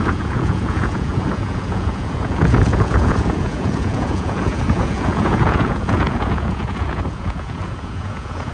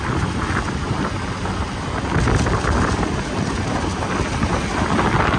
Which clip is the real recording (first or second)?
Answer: second